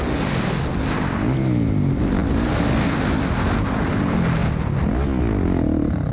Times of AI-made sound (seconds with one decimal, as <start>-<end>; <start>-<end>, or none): none